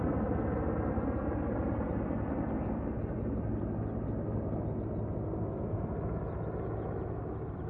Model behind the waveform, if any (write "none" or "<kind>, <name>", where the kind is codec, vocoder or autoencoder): none